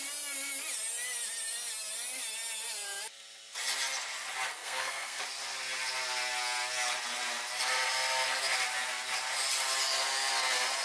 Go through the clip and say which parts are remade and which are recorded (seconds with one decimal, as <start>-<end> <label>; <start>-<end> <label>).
0.0-4.6 recorded; 4.6-5.2 remade; 5.2-10.8 recorded